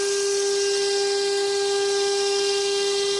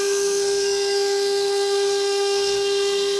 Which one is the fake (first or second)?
second